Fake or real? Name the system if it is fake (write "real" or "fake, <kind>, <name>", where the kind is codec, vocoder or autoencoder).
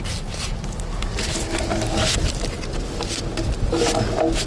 real